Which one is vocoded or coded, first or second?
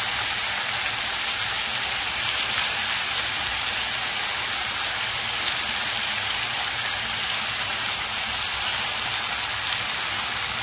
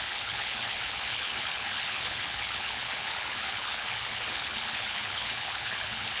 second